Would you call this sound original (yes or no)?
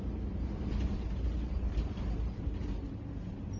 no